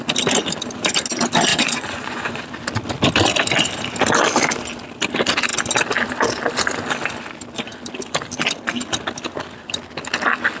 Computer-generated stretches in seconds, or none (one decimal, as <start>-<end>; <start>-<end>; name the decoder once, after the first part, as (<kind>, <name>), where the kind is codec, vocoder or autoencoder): 1.5-2.4 (vocoder, Vocos)